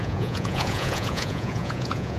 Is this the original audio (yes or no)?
no